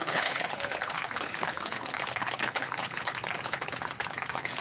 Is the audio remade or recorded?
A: remade